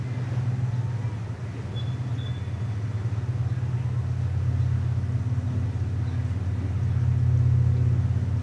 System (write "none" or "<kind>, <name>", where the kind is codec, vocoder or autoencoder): none